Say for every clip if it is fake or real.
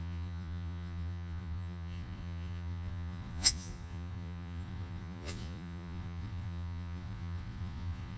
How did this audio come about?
fake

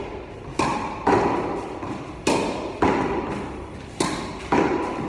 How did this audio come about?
real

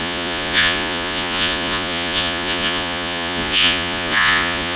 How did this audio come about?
fake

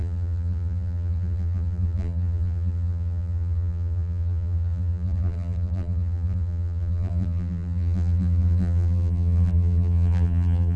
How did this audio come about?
fake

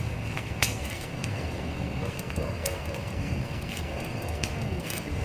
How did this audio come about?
fake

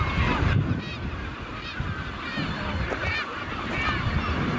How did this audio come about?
real